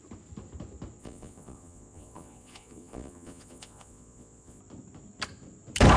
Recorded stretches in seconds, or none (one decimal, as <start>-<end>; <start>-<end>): 0.0-1.0; 4.6-6.0